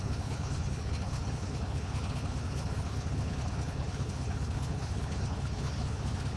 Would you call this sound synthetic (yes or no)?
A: yes